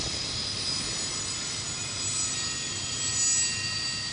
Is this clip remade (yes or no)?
no